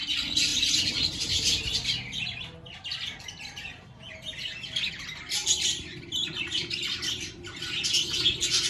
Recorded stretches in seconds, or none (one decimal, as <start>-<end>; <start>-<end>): 0.0-8.7